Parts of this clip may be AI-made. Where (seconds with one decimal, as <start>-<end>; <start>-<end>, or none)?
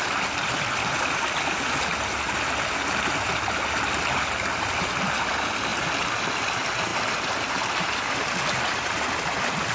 none